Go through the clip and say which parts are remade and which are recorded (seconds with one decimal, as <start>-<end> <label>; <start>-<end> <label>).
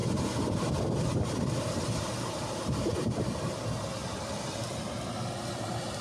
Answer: 0.0-3.6 remade; 3.6-6.0 recorded